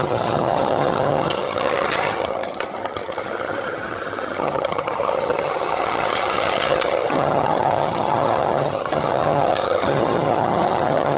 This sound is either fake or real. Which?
fake